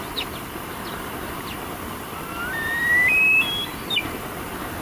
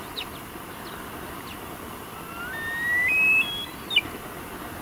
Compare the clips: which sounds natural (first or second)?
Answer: second